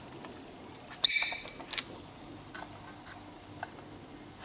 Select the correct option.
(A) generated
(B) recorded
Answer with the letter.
B